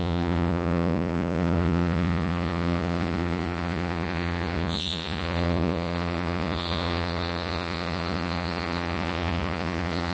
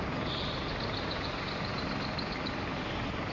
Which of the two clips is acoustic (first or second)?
second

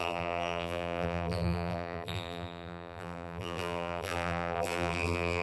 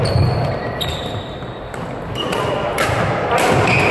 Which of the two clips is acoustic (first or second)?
second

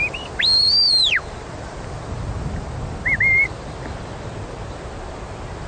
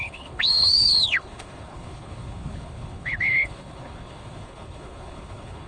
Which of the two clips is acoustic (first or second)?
first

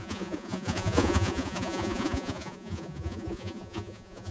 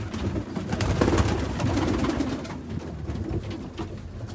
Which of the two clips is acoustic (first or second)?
second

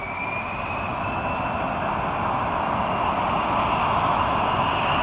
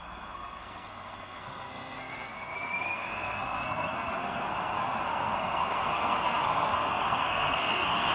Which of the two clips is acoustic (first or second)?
first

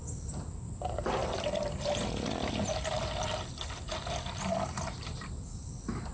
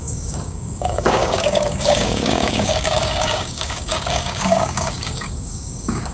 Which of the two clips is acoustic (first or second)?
first